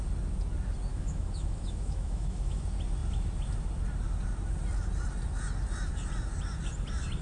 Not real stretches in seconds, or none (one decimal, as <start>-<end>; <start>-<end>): 0.9-2.6